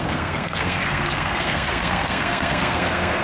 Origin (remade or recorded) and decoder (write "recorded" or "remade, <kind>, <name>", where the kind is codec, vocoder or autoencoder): remade, codec, SNAC